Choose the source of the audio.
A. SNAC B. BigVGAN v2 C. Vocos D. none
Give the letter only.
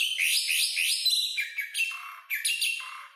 D